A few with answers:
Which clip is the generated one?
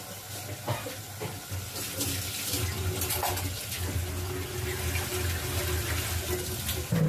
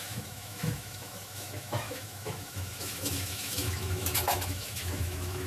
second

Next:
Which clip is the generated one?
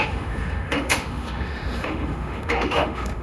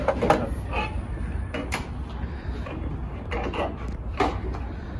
first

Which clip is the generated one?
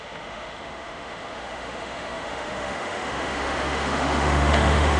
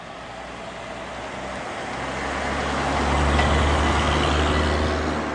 first